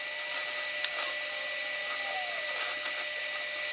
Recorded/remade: recorded